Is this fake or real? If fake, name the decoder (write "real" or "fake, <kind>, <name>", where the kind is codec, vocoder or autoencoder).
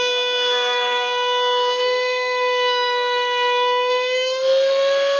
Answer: fake, codec, SNAC